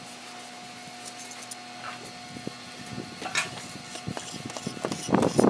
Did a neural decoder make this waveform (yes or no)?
no